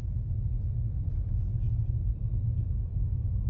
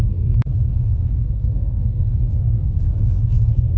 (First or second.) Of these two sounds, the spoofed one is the second